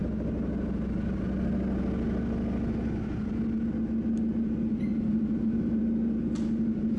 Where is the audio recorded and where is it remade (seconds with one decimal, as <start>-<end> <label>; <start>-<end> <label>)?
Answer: 0.0-7.0 recorded